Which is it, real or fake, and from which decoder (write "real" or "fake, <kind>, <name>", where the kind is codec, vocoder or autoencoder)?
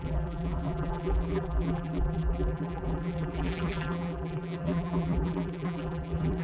fake, vocoder, BigVGAN v2